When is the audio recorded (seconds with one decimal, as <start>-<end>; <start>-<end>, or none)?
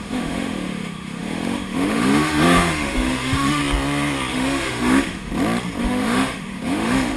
3.6-4.3; 5.3-5.8